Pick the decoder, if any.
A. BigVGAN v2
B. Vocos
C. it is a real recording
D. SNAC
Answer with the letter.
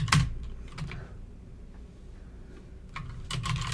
C